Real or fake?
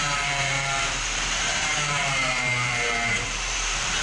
fake